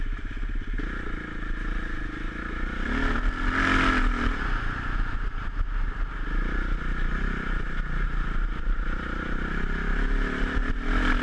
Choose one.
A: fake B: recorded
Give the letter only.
B